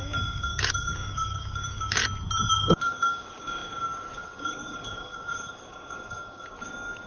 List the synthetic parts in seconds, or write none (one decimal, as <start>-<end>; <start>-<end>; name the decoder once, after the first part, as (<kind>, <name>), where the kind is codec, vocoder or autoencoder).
0.0-2.0 (codec, DAC); 2.5-7.1